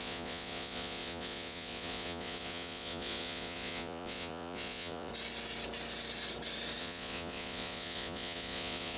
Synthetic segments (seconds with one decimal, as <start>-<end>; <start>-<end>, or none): 0.0-5.1; 6.8-9.0